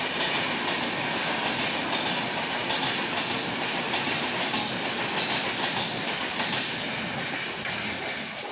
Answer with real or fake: real